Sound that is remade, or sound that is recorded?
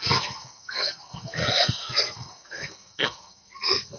remade